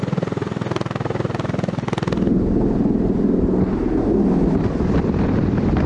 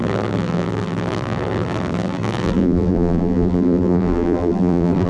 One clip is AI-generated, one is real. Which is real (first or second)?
first